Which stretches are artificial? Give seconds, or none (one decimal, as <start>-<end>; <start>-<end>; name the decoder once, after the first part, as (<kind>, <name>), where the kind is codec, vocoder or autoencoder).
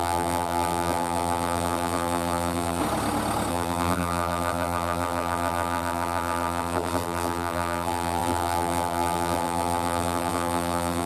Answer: 0.0-2.8 (vocoder, BigVGAN v2); 3.5-11.1